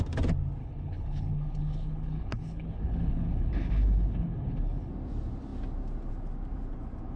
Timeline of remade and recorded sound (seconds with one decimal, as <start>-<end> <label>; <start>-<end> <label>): 0.0-0.6 recorded; 0.6-4.9 remade; 4.9-7.2 recorded

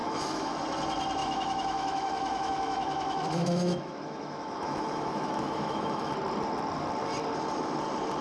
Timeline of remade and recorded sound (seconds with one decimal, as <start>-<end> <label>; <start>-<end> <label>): 0.0-0.5 remade; 0.5-1.2 recorded; 1.2-6.1 remade; 6.1-8.2 recorded

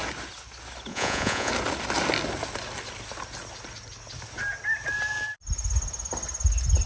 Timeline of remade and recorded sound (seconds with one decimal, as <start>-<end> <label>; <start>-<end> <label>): 0.0-0.9 recorded; 0.9-1.5 remade; 1.5-6.9 recorded

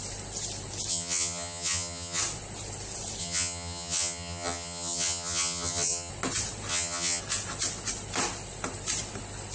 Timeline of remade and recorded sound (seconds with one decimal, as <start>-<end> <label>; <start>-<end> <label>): 0.0-0.9 recorded; 0.9-2.2 remade; 2.2-3.2 recorded; 3.2-6.1 remade; 6.1-6.7 recorded; 6.7-7.2 remade; 7.2-9.5 recorded

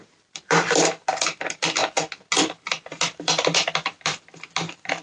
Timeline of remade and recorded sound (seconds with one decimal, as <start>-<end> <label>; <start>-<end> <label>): 0.0-1.8 remade; 1.8-2.4 recorded; 2.4-5.0 remade

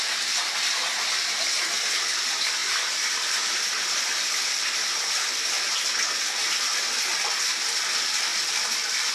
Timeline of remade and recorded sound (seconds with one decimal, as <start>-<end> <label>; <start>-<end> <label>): 0.0-2.6 recorded; 2.6-4.3 remade; 4.3-8.3 recorded; 8.3-9.1 remade

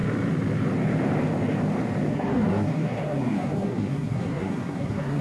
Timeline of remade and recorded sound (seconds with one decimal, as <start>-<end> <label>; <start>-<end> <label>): 0.0-2.1 recorded; 2.1-5.2 remade